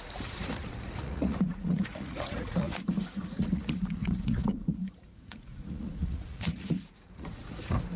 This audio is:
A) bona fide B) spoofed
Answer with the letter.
B